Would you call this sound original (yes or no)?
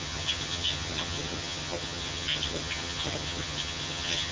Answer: no